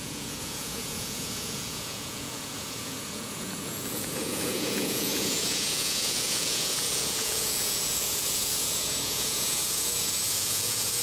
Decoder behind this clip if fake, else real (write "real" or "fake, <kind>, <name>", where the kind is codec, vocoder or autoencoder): fake, vocoder, Vocos